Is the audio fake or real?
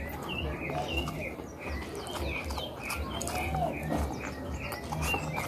real